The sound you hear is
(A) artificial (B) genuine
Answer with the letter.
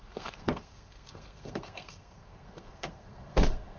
A